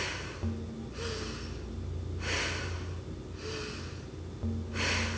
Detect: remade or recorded recorded